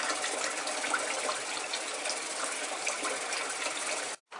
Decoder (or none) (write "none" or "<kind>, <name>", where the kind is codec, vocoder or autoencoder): none